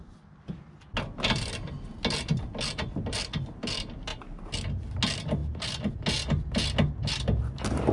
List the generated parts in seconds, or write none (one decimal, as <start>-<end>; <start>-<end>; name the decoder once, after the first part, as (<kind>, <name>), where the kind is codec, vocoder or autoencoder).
none